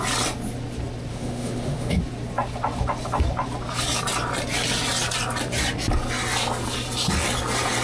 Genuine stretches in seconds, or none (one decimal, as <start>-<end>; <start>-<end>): 0.0-1.1; 2.0-7.8